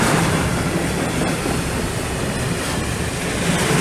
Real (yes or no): yes